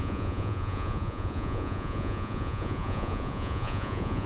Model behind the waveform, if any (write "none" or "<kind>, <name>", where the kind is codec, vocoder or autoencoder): vocoder, Vocos